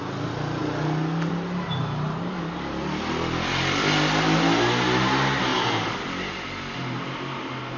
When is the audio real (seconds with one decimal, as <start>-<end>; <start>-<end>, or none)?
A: 0.0-7.8

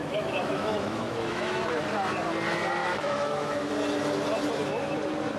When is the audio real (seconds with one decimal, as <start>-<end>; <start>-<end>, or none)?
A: 1.6-2.8; 3.7-5.4

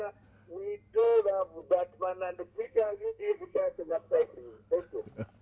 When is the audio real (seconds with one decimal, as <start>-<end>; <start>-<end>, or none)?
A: 0.0-2.5; 4.3-5.4

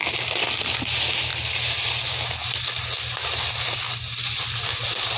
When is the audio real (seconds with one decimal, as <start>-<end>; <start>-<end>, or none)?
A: 0.0-5.2

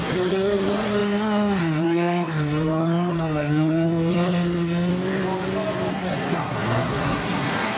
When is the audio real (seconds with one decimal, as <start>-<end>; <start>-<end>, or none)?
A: 4.9-5.9

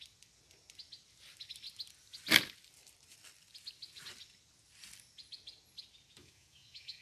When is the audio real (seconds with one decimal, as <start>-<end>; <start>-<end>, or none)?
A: 0.0-6.2

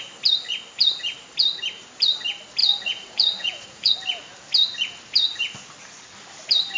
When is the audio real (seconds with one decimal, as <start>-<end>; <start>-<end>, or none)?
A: 0.0-2.6; 3.9-6.8

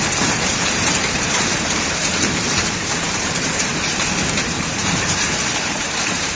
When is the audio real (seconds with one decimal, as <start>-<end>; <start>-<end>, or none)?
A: 3.7-4.7